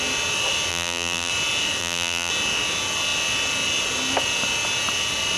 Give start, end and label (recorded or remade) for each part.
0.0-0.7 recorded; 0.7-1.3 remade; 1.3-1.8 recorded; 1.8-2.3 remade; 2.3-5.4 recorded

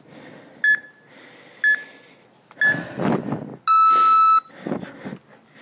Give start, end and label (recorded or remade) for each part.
0.0-5.6 recorded

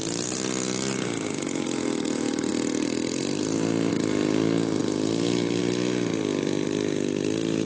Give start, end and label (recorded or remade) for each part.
0.0-2.5 recorded; 2.5-3.9 remade; 3.9-4.8 recorded; 4.8-5.6 remade; 5.6-7.7 recorded

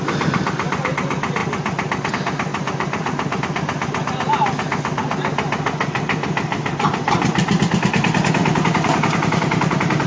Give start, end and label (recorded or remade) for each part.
0.0-2.5 recorded; 2.5-3.4 remade; 3.4-6.5 recorded; 6.5-7.6 remade; 7.6-8.4 recorded; 8.4-10.1 remade

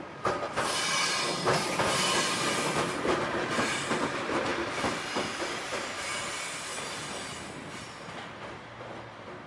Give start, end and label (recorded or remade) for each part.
0.0-6.7 remade; 6.7-7.8 recorded; 7.8-9.5 remade

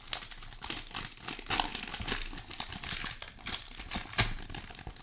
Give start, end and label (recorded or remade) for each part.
0.0-5.0 recorded